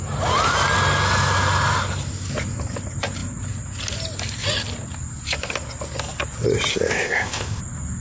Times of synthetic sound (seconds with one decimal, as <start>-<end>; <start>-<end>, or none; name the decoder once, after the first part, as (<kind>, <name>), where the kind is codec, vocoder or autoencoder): 6.7-7.6 (codec, ZipCodec)